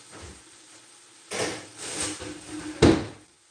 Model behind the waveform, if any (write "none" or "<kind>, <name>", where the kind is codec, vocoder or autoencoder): none